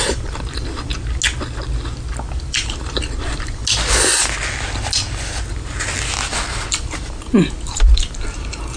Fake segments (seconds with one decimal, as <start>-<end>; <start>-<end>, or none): 0.0-0.9; 2.3-3.6; 6.8-8.8